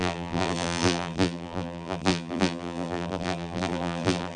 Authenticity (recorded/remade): remade